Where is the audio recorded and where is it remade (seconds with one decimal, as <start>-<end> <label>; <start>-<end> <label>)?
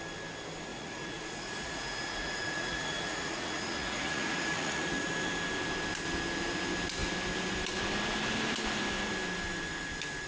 0.0-0.7 recorded; 0.7-5.1 remade; 5.1-10.3 recorded